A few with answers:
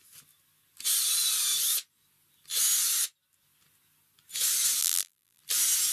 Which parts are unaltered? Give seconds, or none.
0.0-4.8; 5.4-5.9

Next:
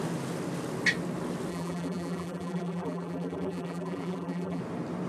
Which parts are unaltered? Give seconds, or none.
0.0-1.5; 4.6-5.1

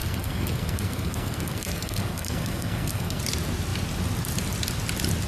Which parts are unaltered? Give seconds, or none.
3.2-5.3

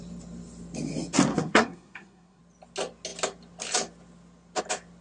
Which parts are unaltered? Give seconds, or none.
0.0-1.3; 2.4-5.0

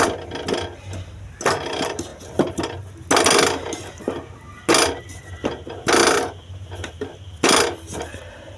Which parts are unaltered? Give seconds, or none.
0.0-8.6

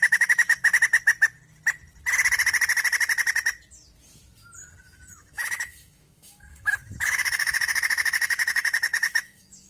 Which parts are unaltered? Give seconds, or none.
0.7-4.8

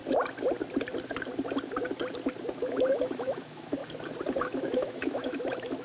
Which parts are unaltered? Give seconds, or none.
0.0-2.6; 3.8-4.4